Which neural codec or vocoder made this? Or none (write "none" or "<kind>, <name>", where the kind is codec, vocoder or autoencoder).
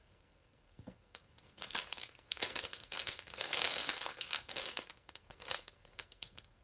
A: codec, SNAC